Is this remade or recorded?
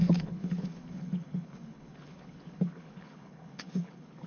remade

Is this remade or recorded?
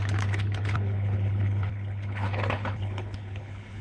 remade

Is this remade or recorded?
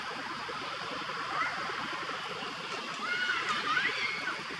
recorded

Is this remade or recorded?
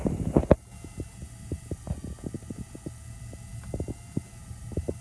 recorded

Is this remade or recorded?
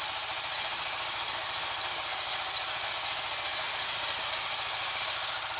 recorded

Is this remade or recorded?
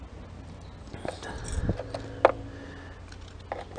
recorded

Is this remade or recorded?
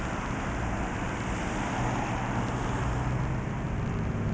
recorded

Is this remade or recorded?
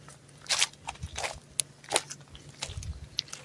recorded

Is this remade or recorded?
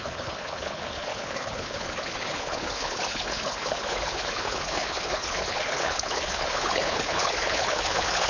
remade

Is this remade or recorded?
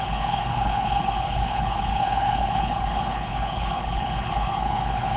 remade